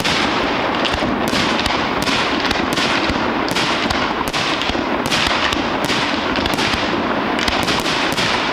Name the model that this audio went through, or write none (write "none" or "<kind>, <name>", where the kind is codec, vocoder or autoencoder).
none